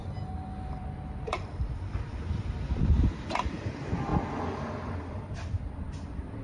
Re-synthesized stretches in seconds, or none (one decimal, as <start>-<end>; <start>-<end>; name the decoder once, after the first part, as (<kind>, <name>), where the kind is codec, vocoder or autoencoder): 0.7-6.4 (vocoder, BigVGAN v2)